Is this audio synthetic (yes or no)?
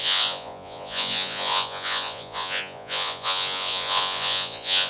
yes